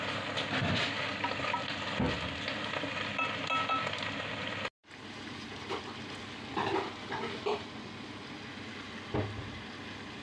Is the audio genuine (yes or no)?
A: yes